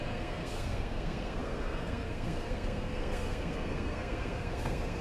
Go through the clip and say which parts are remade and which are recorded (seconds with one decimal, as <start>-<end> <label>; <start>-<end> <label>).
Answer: 0.0-5.0 remade